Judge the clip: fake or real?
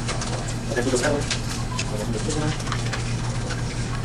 fake